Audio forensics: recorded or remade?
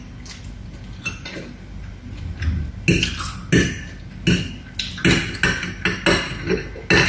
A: recorded